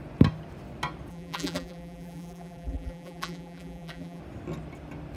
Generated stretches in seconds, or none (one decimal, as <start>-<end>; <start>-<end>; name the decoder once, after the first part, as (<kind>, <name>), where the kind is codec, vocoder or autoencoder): 1.1-4.2 (vocoder, BigVGAN v2)